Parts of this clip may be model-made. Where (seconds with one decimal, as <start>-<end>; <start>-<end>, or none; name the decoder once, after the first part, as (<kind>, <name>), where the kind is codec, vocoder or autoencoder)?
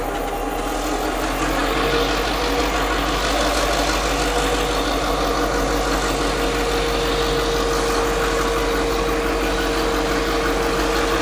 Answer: none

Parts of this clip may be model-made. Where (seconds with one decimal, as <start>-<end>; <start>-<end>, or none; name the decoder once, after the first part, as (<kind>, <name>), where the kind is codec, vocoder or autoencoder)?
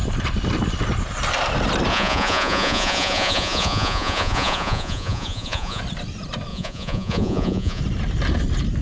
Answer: 1.9-5.8 (vocoder, Vocos); 6.5-7.8